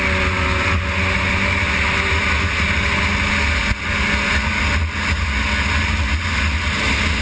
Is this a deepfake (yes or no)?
no